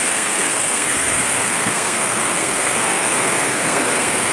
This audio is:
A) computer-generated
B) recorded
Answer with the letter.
A